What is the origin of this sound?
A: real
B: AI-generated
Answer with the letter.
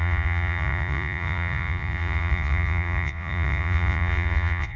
B